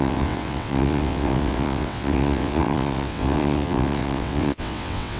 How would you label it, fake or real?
fake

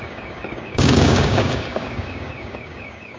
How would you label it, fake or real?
fake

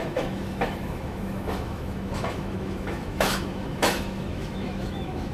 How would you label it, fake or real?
fake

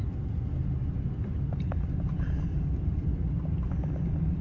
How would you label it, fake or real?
real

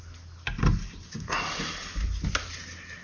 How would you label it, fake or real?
real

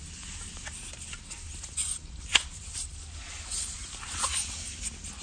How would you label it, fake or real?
real